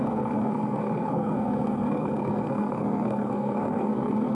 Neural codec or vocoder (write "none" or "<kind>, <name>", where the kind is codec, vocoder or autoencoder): codec, SNAC